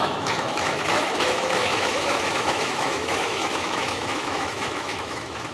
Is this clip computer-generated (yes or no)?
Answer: yes